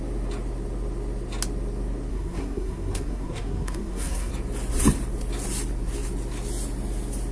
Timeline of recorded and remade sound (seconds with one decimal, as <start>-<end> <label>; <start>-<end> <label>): 0.0-2.1 recorded; 2.1-4.3 remade; 4.3-7.3 recorded